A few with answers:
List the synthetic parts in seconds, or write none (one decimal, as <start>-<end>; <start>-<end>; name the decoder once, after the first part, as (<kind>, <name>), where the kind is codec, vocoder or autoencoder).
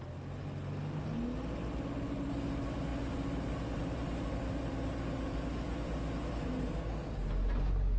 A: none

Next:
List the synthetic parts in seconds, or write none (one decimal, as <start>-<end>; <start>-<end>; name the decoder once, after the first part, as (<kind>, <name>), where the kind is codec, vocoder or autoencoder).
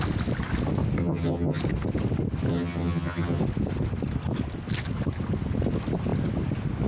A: 1.0-1.6 (vocoder, HiFi-GAN); 2.5-3.4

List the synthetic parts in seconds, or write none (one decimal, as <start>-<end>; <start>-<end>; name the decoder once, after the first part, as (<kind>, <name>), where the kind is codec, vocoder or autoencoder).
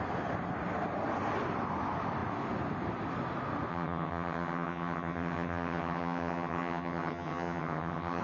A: 3.7-8.2 (vocoder, HiFi-GAN)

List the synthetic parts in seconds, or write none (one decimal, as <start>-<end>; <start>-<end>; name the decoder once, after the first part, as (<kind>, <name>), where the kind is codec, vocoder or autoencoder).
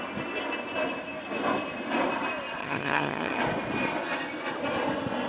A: 2.6-3.4 (vocoder, HiFi-GAN)